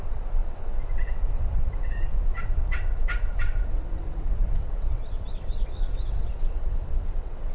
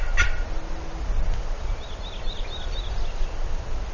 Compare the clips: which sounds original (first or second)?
second